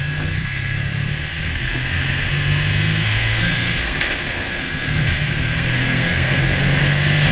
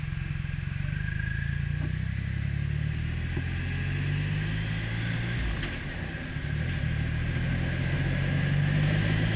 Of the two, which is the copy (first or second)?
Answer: first